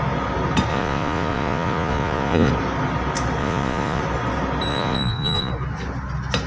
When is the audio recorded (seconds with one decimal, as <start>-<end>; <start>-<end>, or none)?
0.0-0.7; 2.5-3.4; 4.0-4.7; 5.5-6.5